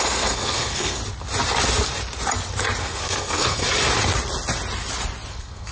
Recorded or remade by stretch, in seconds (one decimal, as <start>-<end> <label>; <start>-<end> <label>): 0.0-1.0 remade; 1.0-2.8 recorded; 2.8-3.6 remade; 3.6-5.3 recorded; 5.3-5.7 remade